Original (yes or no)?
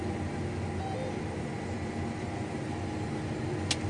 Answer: yes